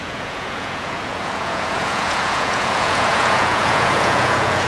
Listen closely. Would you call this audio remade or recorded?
remade